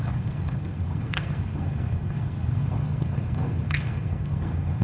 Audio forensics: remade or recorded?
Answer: remade